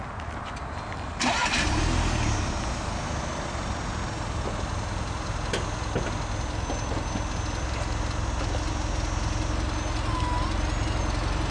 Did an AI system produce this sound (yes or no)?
no